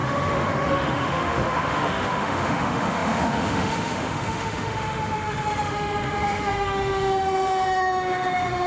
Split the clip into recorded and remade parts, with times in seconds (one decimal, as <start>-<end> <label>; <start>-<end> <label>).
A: 0.0-8.7 remade